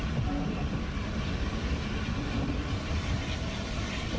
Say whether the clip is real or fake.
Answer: fake